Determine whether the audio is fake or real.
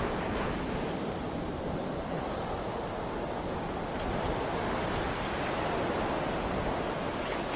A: real